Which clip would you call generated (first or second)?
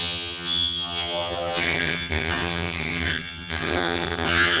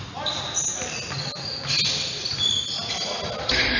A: first